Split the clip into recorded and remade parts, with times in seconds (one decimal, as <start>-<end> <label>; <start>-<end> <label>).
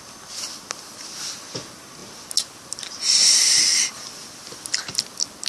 0.0-5.5 recorded